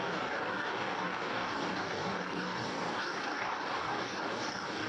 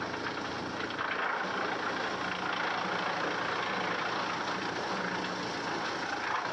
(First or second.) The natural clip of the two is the second